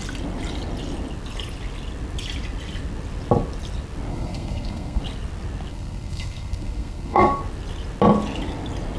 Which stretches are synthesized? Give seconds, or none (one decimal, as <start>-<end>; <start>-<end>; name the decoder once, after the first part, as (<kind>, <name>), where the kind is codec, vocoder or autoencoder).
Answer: 4.1-5.0 (codec, SNAC); 5.7-7.4